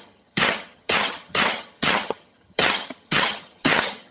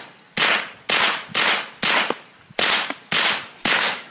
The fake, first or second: first